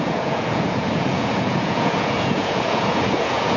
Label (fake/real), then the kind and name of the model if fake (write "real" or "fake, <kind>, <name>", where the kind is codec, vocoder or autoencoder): fake, vocoder, Vocos